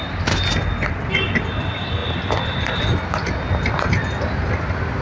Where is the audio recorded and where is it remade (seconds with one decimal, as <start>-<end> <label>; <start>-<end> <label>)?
0.0-5.0 recorded